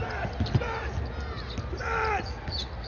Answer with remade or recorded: recorded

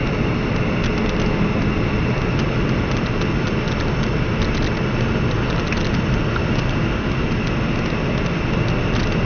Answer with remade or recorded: recorded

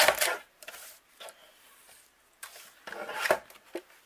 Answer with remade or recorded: recorded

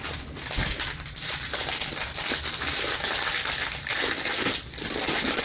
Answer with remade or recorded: recorded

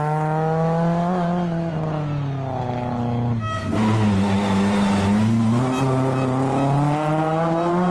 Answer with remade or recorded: recorded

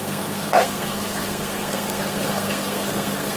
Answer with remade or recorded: remade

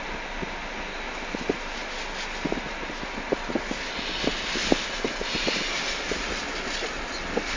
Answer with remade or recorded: recorded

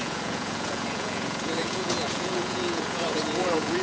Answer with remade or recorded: remade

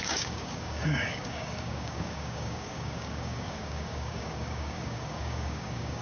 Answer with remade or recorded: remade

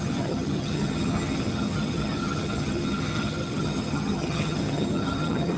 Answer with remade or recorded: remade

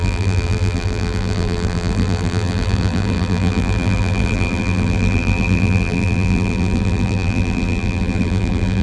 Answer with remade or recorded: remade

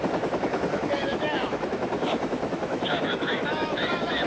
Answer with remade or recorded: remade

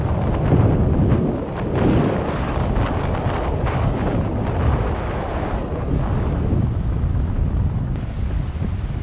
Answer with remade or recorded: recorded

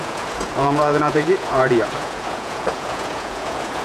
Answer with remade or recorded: remade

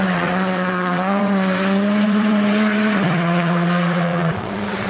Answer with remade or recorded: remade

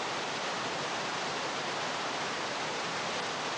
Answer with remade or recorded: recorded